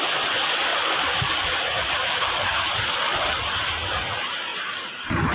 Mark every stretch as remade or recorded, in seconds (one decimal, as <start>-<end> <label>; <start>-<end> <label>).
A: 0.0-5.3 recorded